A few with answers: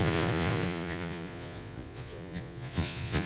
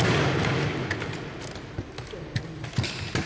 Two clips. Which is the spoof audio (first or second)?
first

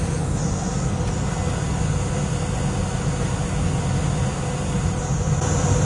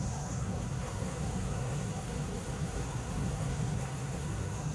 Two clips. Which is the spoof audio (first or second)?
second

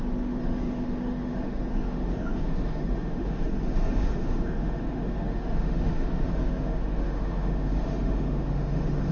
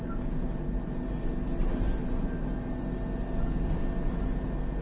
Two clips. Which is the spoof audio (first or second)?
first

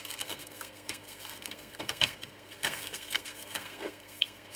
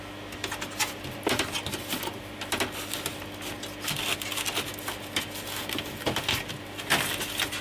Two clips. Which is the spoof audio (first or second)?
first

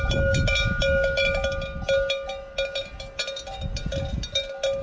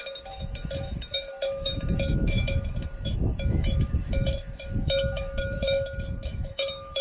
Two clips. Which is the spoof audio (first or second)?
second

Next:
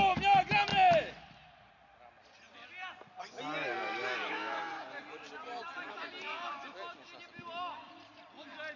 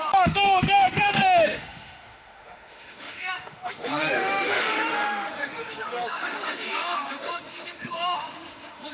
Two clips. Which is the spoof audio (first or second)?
second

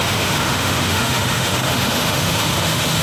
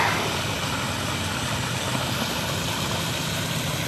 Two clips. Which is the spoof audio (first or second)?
first